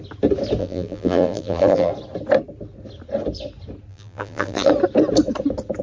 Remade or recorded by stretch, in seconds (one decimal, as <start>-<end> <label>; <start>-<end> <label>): 0.0-0.6 recorded; 0.6-1.9 remade; 1.9-3.9 recorded; 3.9-4.7 remade; 4.7-5.8 recorded